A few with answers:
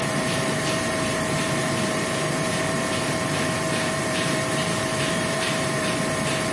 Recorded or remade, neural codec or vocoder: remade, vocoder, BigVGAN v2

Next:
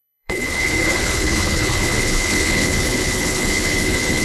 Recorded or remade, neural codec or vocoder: remade, codec, HILCodec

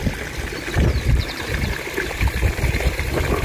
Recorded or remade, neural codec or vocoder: recorded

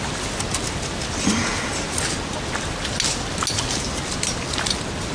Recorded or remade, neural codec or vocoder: recorded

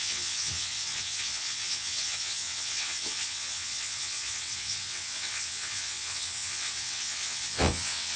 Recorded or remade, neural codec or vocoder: remade, vocoder, WaveNeXt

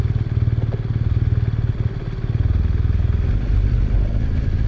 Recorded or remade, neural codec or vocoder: recorded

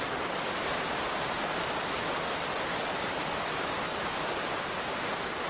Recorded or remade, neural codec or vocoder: recorded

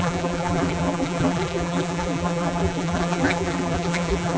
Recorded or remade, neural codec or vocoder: remade, vocoder, BigVGAN v2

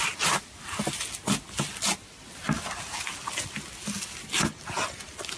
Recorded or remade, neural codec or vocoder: recorded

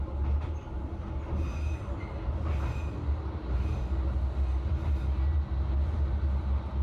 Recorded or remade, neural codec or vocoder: recorded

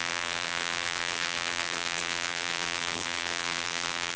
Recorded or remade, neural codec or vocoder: remade, vocoder, BigVGAN v2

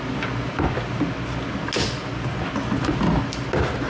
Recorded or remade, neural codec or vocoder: recorded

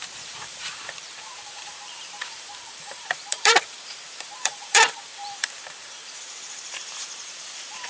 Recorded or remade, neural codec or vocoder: remade, vocoder, BigVGAN v2